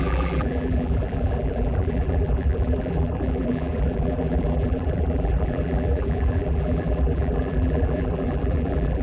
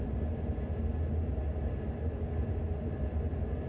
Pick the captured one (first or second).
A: second